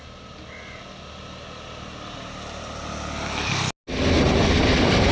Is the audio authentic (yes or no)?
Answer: yes